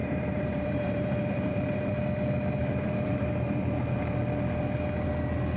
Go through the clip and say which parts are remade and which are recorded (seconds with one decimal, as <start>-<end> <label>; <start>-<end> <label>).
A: 0.0-1.9 remade; 1.9-2.6 recorded; 2.6-3.8 remade; 3.8-5.6 recorded